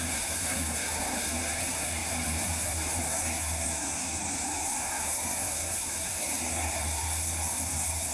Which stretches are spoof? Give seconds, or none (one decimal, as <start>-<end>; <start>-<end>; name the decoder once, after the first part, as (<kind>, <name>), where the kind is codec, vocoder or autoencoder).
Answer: 0.0-8.1 (codec, SNAC)